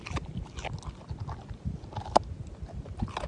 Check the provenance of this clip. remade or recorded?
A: recorded